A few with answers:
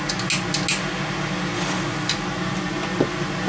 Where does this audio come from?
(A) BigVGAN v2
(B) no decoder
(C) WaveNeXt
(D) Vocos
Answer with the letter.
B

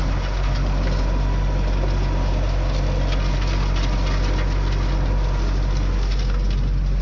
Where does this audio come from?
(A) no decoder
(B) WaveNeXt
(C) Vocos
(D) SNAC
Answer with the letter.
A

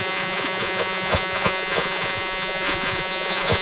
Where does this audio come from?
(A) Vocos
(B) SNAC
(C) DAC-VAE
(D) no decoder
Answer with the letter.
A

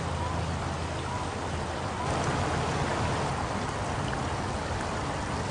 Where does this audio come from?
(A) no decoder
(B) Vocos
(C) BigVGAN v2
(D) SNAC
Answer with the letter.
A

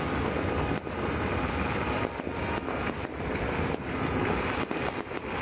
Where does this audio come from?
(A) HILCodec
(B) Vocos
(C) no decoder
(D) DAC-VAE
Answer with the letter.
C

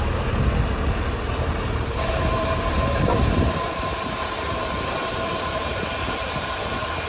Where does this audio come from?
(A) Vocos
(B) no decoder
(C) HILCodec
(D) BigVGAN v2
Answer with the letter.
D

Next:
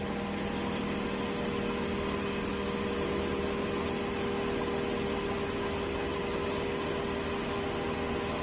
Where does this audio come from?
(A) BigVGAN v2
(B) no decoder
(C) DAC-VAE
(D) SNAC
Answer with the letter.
B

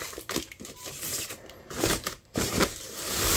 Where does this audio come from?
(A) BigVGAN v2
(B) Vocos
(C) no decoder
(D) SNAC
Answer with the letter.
A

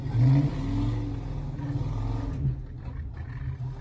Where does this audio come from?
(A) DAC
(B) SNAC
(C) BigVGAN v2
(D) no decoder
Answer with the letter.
D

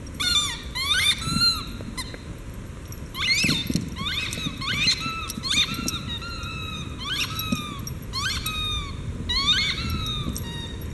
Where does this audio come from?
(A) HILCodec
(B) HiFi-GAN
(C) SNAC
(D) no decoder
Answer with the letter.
D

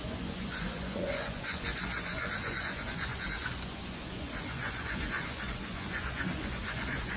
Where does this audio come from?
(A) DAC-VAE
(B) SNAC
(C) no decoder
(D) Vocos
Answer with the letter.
D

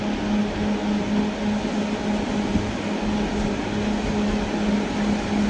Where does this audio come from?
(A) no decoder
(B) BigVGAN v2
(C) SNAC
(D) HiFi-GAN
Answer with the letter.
A